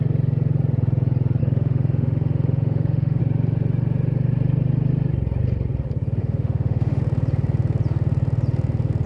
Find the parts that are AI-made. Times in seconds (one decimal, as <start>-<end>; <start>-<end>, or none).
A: 1.4-3.2; 6.2-7.0